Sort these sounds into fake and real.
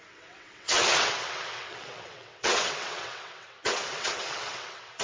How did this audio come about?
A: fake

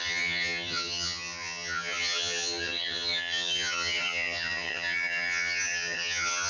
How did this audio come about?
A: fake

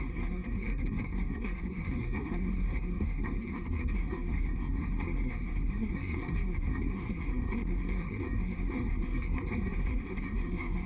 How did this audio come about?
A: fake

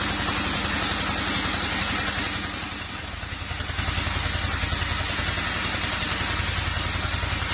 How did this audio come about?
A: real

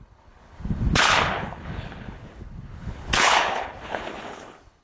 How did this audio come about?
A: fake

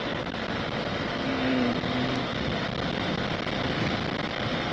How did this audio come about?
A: real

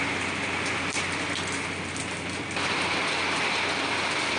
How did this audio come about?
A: real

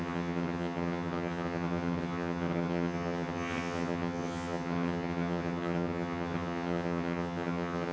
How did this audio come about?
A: fake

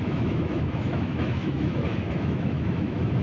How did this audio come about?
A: fake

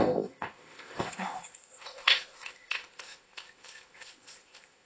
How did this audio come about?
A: fake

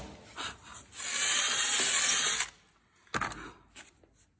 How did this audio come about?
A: real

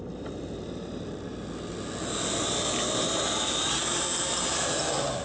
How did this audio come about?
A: real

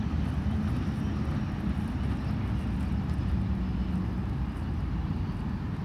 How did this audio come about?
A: real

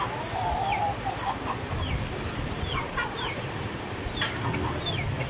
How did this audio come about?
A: real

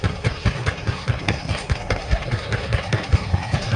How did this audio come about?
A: fake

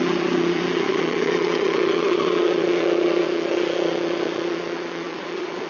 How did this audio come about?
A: fake